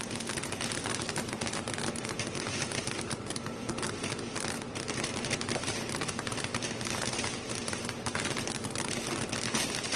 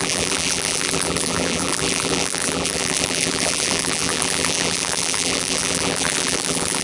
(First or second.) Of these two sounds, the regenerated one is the second